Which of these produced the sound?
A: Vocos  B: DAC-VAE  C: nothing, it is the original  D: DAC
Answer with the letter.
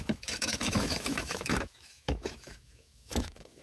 B